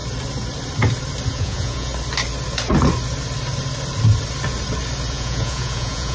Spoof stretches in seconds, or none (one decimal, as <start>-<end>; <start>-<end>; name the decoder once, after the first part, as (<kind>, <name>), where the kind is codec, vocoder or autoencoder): 1.3-1.9 (vocoder, Vocos); 5.1-6.1